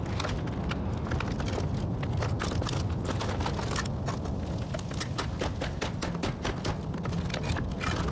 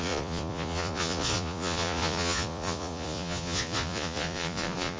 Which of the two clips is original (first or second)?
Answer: first